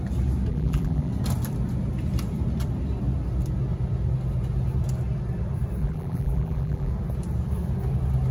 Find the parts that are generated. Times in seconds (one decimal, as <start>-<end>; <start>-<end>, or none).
0.5-1.1; 5.8-6.9